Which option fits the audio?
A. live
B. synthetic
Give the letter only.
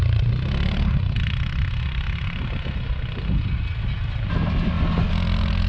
A